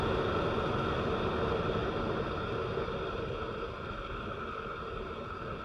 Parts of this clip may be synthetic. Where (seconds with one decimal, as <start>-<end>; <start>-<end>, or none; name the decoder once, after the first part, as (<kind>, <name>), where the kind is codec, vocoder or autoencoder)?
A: none